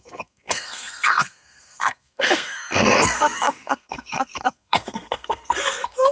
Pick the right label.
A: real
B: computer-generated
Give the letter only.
B